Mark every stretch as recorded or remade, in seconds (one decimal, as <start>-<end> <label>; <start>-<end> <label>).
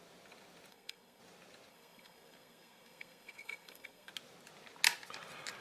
0.0-0.7 recorded; 0.7-1.2 remade; 1.2-1.7 recorded; 1.7-4.1 remade; 4.1-5.6 recorded